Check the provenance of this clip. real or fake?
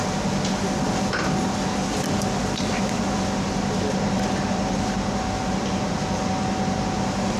real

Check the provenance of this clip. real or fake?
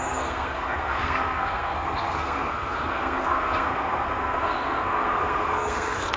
fake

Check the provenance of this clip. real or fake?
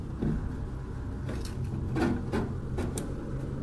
real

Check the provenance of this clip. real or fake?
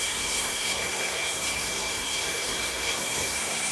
fake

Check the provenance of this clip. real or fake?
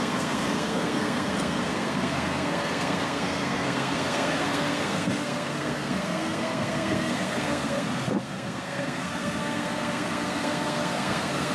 fake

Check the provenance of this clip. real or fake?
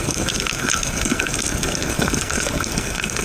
fake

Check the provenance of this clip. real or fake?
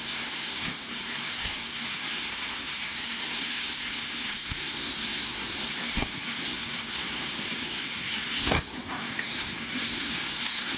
fake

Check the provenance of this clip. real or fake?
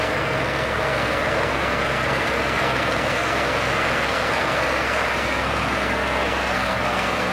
fake